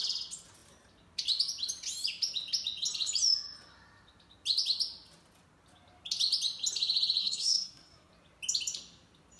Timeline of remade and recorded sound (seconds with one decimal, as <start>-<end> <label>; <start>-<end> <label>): 0.0-7.2 recorded; 7.2-8.1 remade; 8.1-9.4 recorded